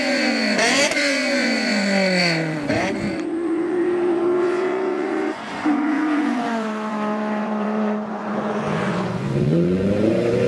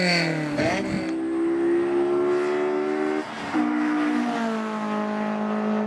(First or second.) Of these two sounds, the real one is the second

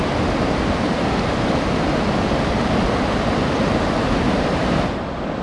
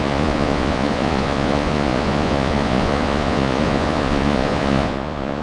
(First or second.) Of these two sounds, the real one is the first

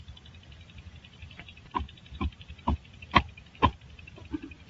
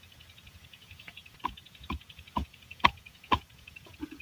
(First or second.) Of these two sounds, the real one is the first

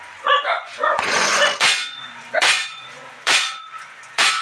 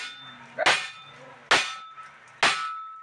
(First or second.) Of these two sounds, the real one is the second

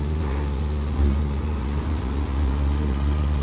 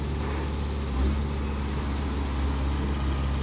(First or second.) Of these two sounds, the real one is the second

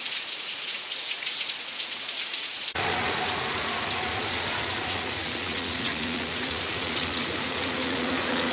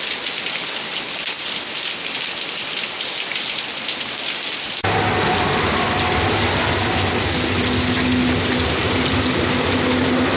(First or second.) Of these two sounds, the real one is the second